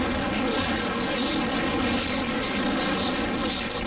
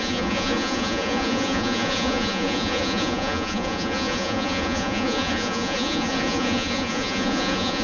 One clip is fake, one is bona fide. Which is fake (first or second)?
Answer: second